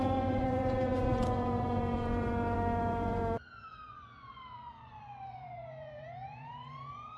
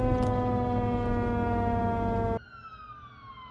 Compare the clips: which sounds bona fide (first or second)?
second